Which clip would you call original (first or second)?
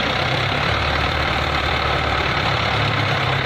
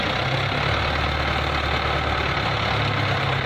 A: second